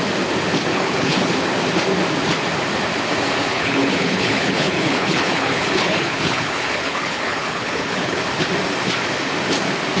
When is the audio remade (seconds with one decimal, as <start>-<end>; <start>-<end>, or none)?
0.7-1.3; 3.5-8.2